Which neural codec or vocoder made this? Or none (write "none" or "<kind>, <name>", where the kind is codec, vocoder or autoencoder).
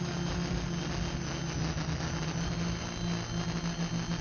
none